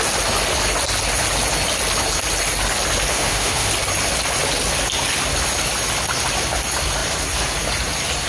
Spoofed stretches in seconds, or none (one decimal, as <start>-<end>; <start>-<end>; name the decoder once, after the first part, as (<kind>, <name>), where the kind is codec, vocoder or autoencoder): 3.1-3.7 (autoencoder, DAC-VAE)